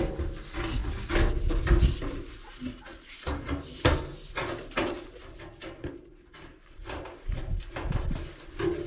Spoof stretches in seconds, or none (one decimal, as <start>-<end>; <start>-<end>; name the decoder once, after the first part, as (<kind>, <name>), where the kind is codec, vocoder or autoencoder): 5.6-6.1 (vocoder, BigVGAN v2)